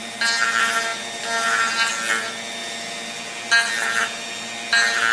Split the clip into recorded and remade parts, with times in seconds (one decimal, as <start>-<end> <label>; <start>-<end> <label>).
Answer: 0.0-5.1 recorded